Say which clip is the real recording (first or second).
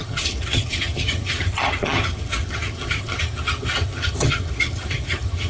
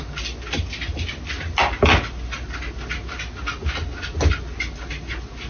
second